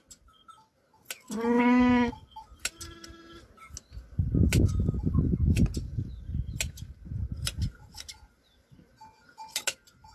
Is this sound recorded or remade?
recorded